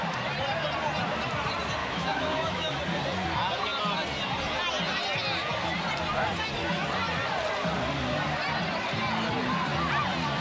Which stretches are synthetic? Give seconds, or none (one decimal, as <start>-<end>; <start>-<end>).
1.8-2.8